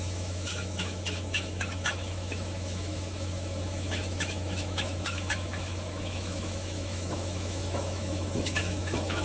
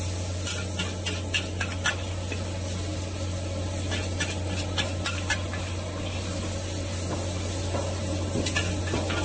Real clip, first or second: second